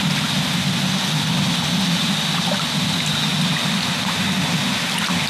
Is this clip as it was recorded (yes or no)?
yes